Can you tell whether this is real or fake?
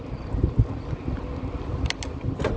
real